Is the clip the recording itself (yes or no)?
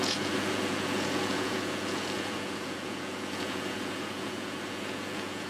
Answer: no